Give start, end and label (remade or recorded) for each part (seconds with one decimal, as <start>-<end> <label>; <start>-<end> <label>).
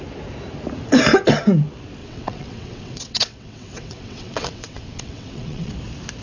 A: 0.0-2.0 recorded; 2.0-5.7 remade; 5.7-6.2 recorded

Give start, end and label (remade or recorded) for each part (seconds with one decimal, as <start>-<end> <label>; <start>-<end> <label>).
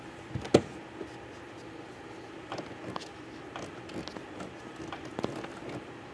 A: 0.0-6.1 recorded